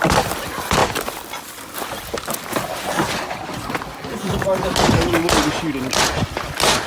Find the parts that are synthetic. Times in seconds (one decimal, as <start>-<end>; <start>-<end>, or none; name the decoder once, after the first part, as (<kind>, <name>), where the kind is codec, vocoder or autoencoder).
none